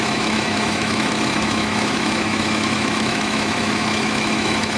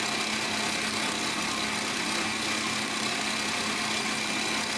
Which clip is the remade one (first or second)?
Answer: first